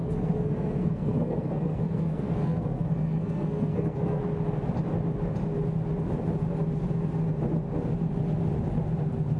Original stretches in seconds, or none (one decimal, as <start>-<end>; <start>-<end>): 4.2-9.4